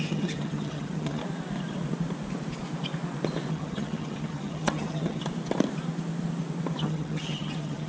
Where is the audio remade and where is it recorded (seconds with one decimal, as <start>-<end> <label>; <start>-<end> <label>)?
0.0-1.2 remade; 1.2-3.5 recorded; 3.5-5.2 remade; 5.2-6.8 recorded; 6.8-7.9 remade